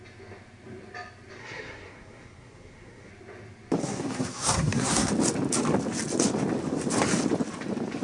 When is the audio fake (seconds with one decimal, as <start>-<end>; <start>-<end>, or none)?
1.4-3.1; 3.8-5.1